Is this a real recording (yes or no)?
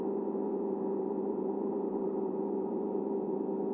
no